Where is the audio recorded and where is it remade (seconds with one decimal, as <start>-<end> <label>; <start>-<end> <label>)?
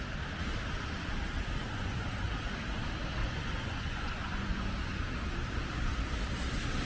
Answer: 0.0-1.6 recorded; 1.6-2.3 remade; 2.3-3.2 recorded; 3.2-4.7 remade; 4.7-6.9 recorded